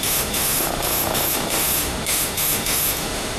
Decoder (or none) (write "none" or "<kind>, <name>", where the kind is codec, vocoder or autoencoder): autoencoder, DAC-VAE